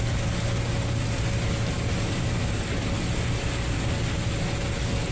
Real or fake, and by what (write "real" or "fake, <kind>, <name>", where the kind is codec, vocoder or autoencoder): real